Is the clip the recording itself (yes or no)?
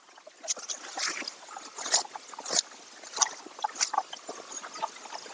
yes